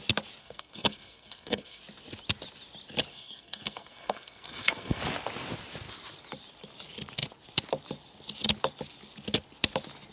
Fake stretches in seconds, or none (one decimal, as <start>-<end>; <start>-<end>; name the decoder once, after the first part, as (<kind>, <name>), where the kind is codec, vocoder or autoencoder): 0.4-1.8 (codec, SNAC); 3.1-5.0